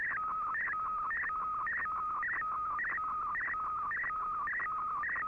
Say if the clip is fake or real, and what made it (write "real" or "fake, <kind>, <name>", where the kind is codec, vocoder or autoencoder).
real